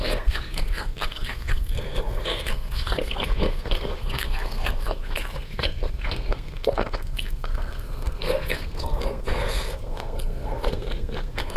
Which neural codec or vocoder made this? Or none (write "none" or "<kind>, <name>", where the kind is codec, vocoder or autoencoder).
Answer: codec, SNAC